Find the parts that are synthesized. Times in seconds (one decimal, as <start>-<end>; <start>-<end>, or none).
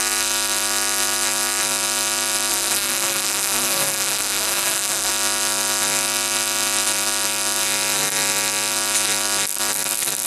2.5-5.1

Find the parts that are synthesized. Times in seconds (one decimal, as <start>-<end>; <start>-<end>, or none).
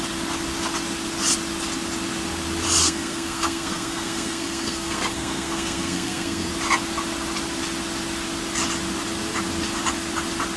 2.8-6.5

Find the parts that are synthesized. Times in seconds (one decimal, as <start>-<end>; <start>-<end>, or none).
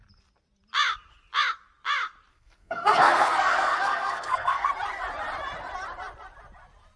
2.3-4.7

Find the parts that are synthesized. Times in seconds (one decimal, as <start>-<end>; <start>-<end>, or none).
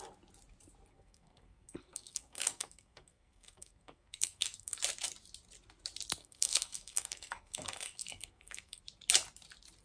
0.9-4.8; 6.2-8.8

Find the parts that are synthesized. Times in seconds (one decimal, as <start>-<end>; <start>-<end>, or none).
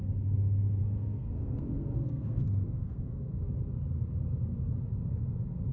0.8-3.4